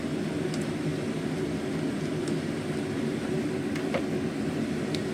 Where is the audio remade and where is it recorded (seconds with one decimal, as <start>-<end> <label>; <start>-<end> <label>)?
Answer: 0.0-5.1 recorded